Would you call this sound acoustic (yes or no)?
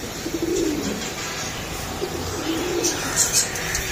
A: no